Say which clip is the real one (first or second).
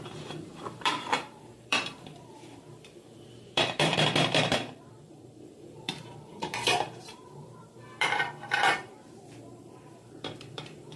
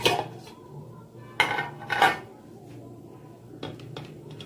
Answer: second